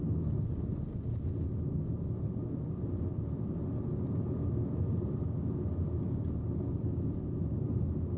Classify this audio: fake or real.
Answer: real